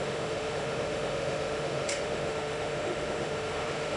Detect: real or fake fake